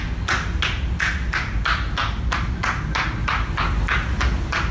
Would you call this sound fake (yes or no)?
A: no